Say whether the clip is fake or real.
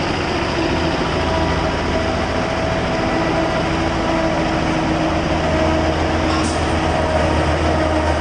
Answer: real